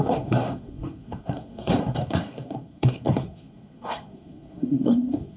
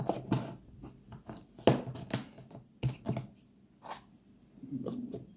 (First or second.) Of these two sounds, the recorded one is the second